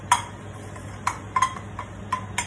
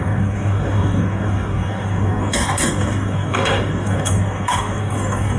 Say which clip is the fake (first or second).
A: second